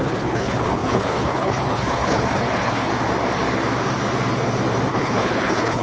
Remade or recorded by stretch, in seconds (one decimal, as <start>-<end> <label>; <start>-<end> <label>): 0.0-2.9 remade; 2.9-4.9 recorded; 4.9-5.8 remade